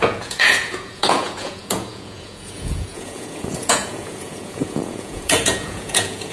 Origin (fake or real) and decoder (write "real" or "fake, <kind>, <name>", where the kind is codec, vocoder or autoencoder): fake, vocoder, Vocos